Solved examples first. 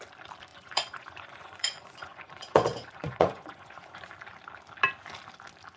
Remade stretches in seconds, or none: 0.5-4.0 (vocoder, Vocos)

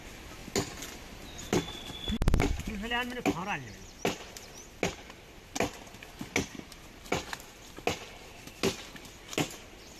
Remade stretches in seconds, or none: none

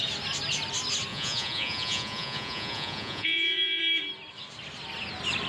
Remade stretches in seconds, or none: 1.1-3.8 (vocoder, Vocos)

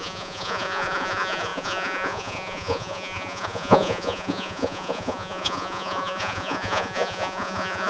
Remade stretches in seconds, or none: 0.0-7.9 (vocoder, Vocos)

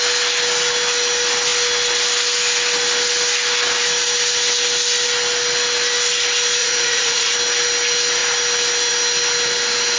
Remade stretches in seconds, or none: 6.6-7.3 (vocoder, Vocos)

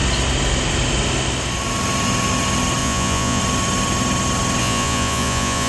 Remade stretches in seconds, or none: 2.8-3.4 (vocoder, Vocos); 4.6-5.7

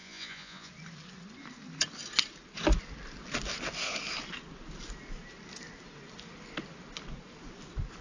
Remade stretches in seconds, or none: 0.0-0.7 (vocoder, Vocos)

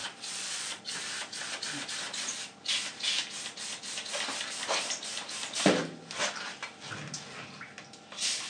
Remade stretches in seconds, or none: 0.0-0.8 (vocoder, Vocos)